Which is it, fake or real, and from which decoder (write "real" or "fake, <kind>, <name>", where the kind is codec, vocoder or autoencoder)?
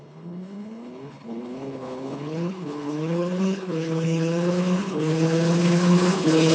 fake, codec, HILCodec